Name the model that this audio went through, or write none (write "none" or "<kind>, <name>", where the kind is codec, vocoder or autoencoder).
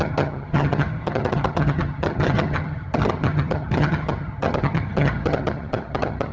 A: vocoder, HiFi-GAN